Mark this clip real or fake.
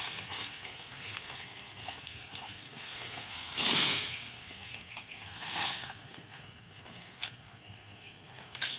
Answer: fake